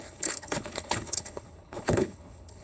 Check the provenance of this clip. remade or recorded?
remade